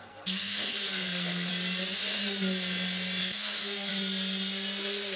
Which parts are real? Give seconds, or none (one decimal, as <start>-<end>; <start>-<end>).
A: 1.5-3.2; 3.9-5.2